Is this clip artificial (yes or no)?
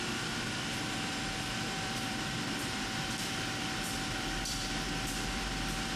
yes